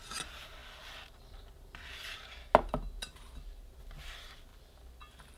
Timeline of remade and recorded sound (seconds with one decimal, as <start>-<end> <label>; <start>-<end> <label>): 0.0-5.4 recorded